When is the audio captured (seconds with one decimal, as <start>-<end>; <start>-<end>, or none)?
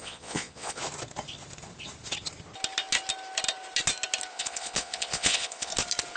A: 0.8-4.3; 5.7-6.2